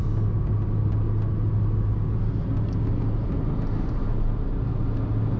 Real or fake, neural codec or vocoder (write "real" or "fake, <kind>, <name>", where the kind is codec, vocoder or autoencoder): real